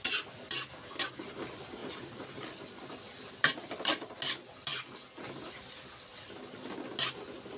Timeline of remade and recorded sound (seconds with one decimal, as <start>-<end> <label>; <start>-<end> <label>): 0.0-1.8 recorded; 1.8-4.2 remade; 4.2-7.6 recorded